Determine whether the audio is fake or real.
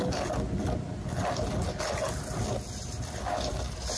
real